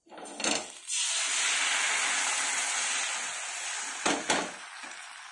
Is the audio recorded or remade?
recorded